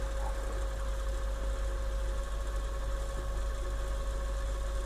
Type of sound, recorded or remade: recorded